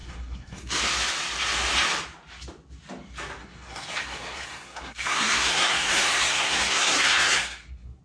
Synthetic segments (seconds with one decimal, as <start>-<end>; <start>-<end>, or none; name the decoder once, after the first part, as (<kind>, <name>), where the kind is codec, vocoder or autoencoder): 0.0-0.8 (codec, SNAC); 3.4-8.0